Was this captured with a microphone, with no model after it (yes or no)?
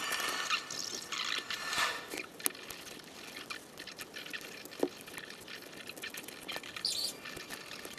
yes